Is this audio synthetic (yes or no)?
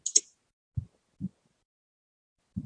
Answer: no